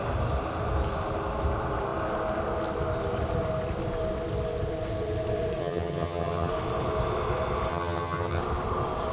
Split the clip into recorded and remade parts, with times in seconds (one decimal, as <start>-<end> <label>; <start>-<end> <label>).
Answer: 0.0-5.6 recorded; 5.6-6.5 remade; 6.5-7.7 recorded; 7.7-8.4 remade; 8.4-9.1 recorded